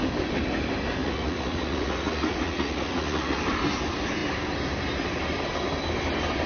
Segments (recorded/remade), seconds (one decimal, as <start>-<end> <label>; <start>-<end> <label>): 0.0-1.0 recorded; 1.0-3.4 remade; 3.4-6.5 recorded

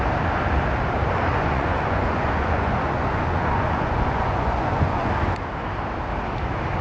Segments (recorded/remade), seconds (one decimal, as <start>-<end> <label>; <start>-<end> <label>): 0.0-1.3 recorded; 1.3-5.1 remade; 5.1-6.8 recorded

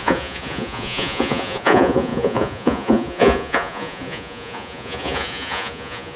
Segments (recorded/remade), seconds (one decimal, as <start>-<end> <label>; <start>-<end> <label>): 0.0-6.2 remade

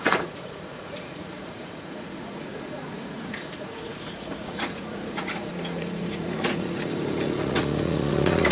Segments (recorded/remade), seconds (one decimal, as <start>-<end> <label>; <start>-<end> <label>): 0.0-8.5 remade

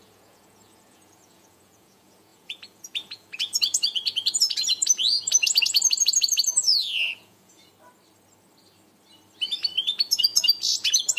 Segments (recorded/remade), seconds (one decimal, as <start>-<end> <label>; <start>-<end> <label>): 0.0-7.7 remade; 7.7-9.8 recorded; 9.8-11.2 remade

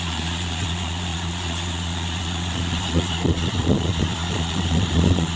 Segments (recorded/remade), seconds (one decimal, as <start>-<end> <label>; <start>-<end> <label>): 0.0-5.4 remade

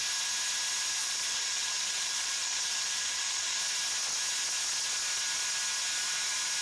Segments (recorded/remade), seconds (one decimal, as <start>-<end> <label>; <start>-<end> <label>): 0.0-1.0 recorded; 1.0-3.6 remade; 3.6-6.6 recorded